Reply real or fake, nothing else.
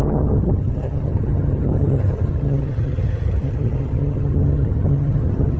fake